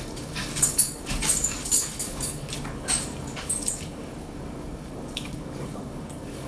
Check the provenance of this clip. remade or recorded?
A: remade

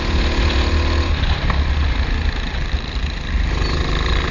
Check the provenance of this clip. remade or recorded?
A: recorded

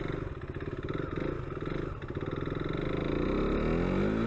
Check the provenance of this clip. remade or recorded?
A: recorded